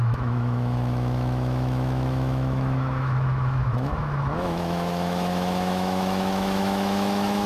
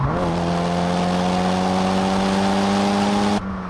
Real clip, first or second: second